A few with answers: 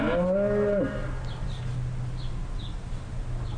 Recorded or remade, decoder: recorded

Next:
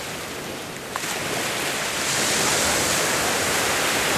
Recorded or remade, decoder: recorded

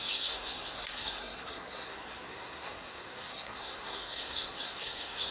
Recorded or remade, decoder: remade, codec, SNAC